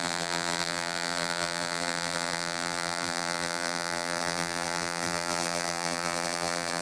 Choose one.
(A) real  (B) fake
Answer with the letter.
B